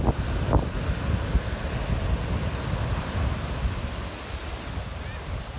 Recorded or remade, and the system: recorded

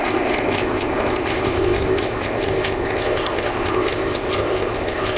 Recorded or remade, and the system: remade, codec, ZipCodec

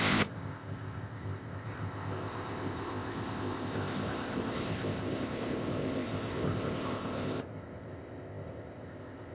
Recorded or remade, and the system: remade, codec, ZipCodec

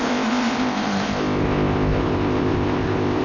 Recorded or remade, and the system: remade, codec, ZipCodec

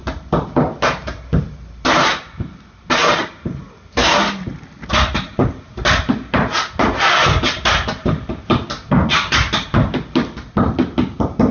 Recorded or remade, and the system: recorded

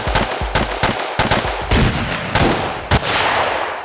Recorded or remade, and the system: recorded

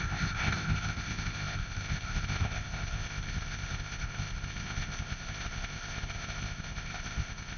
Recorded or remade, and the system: remade, codec, ZipCodec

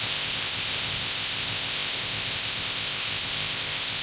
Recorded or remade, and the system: remade, codec, ZipCodec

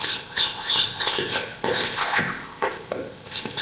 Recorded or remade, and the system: remade, codec, ZipCodec